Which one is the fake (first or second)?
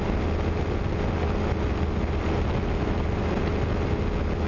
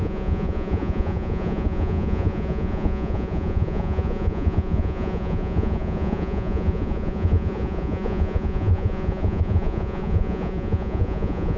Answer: second